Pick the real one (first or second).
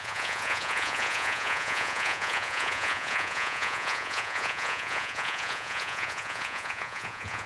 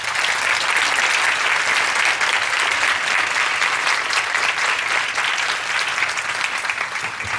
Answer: second